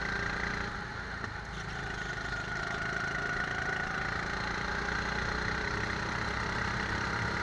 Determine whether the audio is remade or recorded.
recorded